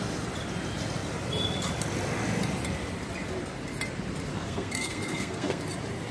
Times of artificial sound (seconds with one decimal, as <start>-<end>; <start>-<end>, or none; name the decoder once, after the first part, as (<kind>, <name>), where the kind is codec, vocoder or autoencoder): 4.3-5.6 (codec, SNAC)